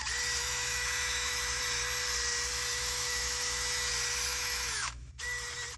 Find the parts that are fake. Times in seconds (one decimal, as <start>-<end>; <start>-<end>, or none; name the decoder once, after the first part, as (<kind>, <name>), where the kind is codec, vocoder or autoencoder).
0.4-1.6 (autoencoder, DAC-VAE); 2.7-3.9; 4.3-5.1